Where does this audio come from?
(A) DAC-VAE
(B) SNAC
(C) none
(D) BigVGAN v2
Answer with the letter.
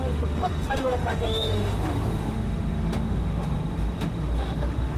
A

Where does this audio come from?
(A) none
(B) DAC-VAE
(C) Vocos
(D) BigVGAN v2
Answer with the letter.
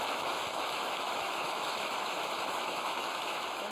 B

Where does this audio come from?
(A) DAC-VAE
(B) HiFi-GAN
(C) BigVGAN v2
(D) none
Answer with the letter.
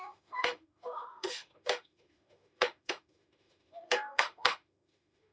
A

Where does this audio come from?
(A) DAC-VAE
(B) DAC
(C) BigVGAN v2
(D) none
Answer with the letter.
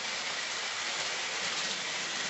D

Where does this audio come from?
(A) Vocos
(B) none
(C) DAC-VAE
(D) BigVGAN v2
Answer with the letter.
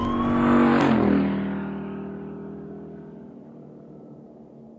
B